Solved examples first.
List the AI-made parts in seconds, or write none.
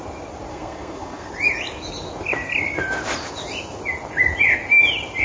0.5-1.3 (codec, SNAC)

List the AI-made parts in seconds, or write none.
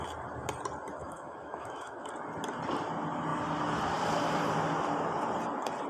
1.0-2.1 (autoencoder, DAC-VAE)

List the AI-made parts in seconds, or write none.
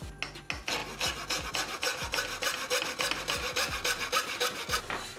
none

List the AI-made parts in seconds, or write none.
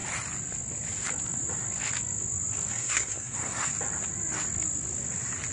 2.7-3.7 (codec, SNAC)